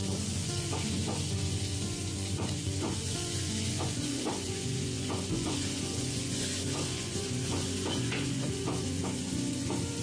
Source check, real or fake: fake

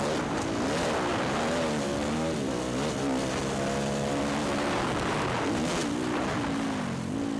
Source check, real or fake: real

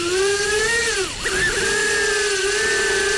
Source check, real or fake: real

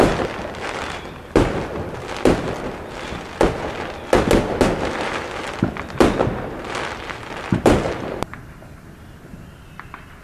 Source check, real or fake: real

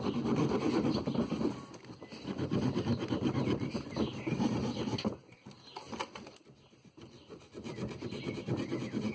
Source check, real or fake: real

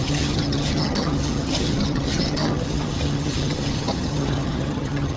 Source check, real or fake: fake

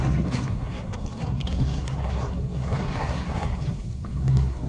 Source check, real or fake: fake